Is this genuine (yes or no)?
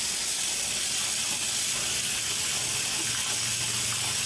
yes